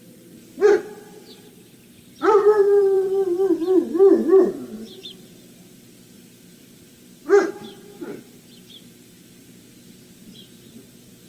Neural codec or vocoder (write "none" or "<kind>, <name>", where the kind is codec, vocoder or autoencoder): vocoder, BigVGAN v2